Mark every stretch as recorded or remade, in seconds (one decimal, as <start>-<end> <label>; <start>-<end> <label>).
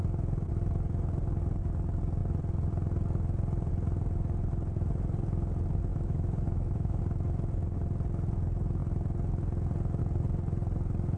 0.0-5.9 recorded; 5.9-7.0 remade; 7.0-11.2 recorded